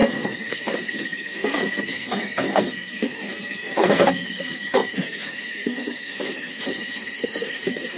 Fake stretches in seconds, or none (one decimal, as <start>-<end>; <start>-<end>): 0.0-8.0